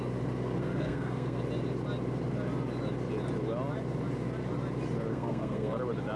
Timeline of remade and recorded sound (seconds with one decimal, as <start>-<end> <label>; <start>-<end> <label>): 0.0-0.6 recorded; 0.6-1.4 remade; 1.4-5.1 recorded; 5.1-5.8 remade; 5.8-6.2 recorded